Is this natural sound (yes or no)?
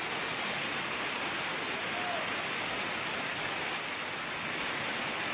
yes